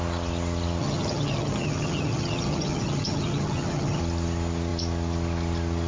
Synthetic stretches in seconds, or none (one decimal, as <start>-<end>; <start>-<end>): 0.8-4.0